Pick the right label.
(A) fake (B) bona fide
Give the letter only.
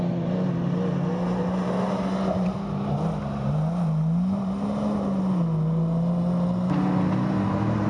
B